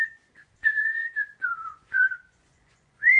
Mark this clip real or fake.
fake